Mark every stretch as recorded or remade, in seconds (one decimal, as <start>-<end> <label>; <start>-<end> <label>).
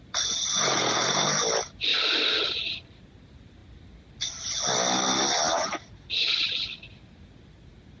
0.0-8.0 recorded